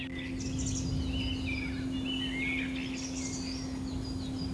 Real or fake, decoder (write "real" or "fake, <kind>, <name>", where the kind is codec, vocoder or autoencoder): real